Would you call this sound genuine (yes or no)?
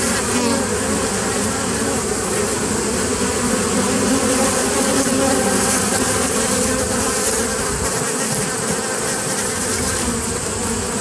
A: yes